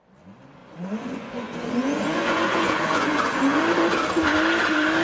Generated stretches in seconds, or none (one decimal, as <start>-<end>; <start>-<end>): 0.6-3.6

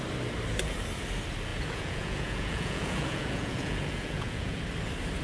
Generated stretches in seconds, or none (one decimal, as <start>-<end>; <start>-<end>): 1.5-4.6